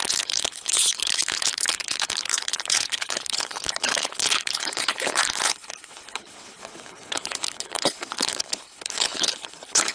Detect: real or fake fake